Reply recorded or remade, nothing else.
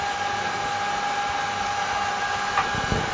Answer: recorded